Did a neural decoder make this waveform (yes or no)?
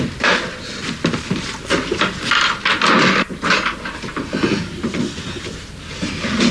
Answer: no